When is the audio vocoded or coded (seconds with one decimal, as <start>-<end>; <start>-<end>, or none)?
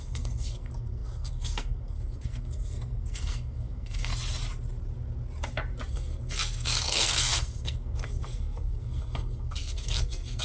0.0-4.1; 5.9-10.4